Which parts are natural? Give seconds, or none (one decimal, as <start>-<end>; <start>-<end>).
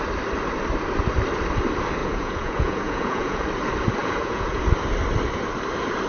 0.0-2.0; 3.4-4.0; 4.6-6.1